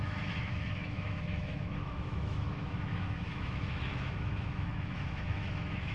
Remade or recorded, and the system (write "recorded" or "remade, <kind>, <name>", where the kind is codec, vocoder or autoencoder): remade, autoencoder, DAC-VAE